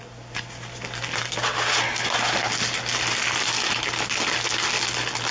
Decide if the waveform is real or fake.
real